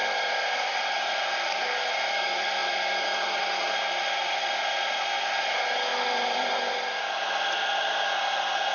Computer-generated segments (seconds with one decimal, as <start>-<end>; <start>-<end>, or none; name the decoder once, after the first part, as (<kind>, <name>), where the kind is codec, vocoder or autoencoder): 0.0-1.6 (vocoder, BigVGAN v2); 5.9-7.3